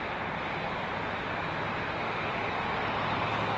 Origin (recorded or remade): recorded